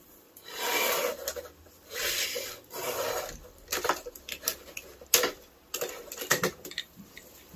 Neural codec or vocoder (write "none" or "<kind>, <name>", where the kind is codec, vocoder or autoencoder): none